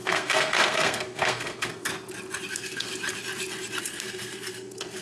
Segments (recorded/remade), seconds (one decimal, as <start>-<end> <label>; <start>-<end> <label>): 0.0-1.9 remade; 1.9-2.5 recorded; 2.5-2.9 remade; 2.9-3.8 recorded; 3.8-5.0 remade